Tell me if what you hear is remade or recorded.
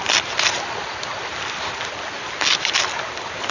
recorded